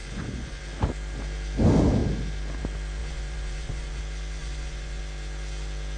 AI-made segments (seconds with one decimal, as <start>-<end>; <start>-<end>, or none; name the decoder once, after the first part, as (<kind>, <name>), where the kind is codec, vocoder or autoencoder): 0.0-0.6 (vocoder, Vocos); 3.0-4.0; 4.4-5.0